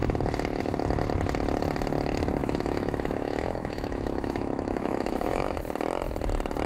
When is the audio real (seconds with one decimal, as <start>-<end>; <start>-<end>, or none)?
0.0-2.4; 5.6-6.7